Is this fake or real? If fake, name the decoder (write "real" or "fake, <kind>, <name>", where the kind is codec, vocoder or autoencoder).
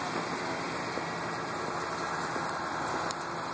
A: real